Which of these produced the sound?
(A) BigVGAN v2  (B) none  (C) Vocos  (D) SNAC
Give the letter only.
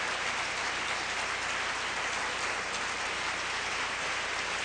B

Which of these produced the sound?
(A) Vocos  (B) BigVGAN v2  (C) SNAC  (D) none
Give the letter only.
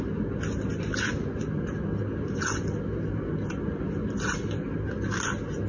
D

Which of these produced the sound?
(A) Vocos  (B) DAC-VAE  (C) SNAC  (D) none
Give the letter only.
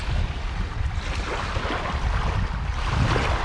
D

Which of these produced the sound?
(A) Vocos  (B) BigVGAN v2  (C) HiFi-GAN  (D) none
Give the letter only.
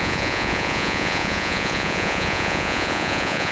A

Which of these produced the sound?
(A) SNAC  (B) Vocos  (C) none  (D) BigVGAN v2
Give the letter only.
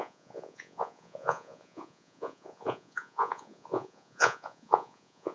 B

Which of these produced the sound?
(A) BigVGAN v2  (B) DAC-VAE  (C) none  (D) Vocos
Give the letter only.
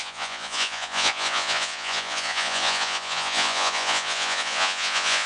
D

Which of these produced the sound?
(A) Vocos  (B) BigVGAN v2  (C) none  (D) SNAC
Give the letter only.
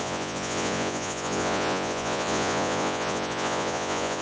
A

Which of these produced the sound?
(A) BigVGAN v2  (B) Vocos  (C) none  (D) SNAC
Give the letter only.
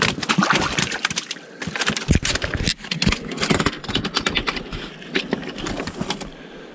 C